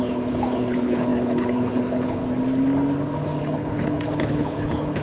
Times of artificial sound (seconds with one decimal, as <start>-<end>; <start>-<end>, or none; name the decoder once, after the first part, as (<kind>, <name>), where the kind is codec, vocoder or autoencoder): 0.0-2.2 (codec, HILCodec); 3.4-5.0